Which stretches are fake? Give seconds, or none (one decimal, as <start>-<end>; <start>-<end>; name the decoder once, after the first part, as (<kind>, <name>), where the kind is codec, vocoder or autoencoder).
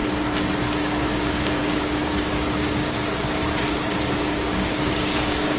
0.8-3.4 (codec, DAC); 4.1-5.6